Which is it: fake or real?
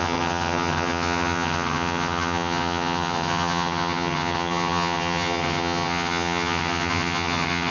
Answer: fake